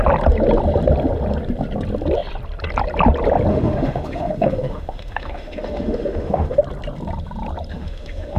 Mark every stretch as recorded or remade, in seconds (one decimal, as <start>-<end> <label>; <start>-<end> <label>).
0.0-3.5 recorded; 3.5-6.6 remade; 6.6-7.7 recorded; 7.7-8.4 remade